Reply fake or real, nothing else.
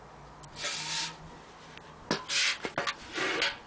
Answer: real